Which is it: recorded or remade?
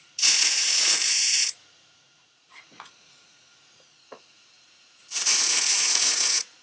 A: remade